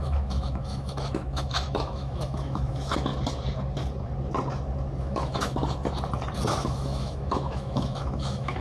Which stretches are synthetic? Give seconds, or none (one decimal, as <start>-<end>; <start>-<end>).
0.0-3.1; 5.0-5.6; 6.5-8.6